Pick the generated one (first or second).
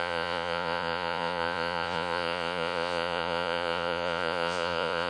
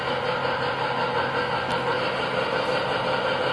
first